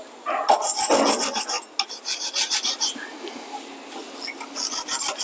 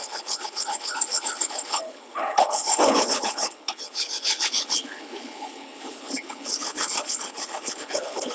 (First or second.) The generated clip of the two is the second